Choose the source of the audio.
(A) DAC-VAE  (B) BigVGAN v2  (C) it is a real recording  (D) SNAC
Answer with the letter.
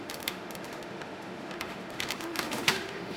A